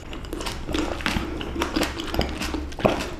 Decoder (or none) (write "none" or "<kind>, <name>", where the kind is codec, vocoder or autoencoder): none